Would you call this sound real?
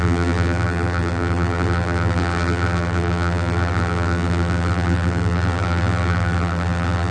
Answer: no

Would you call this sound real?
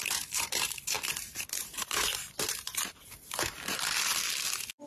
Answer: no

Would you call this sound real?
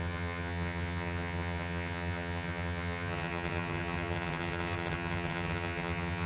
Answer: no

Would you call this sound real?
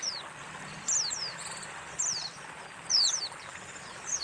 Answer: no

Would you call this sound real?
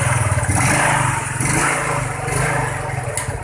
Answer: yes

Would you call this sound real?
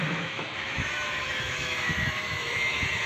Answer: no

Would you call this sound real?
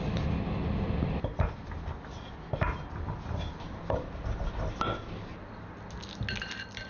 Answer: yes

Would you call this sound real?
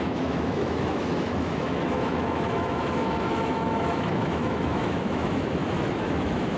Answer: no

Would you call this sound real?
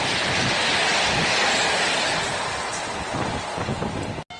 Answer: yes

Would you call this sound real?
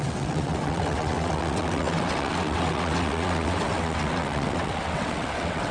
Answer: no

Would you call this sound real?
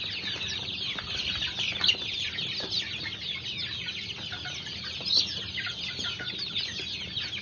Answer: yes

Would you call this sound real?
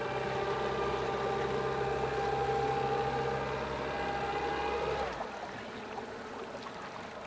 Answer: yes